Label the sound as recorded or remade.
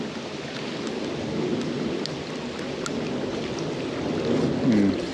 recorded